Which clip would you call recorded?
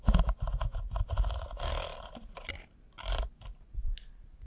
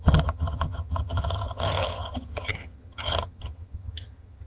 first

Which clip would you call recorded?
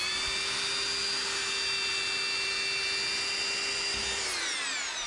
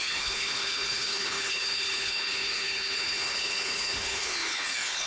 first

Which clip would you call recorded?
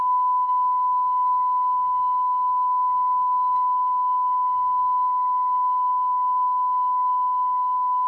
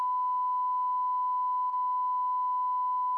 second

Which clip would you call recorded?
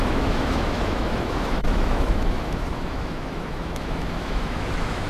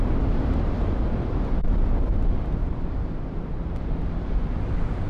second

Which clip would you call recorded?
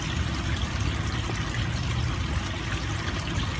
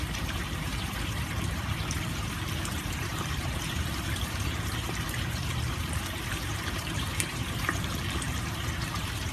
first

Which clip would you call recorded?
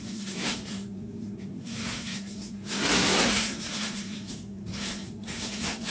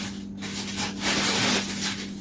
second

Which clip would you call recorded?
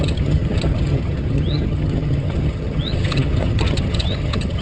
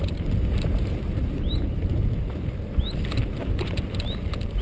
second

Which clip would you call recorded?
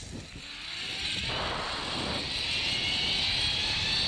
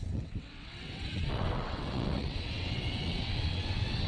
first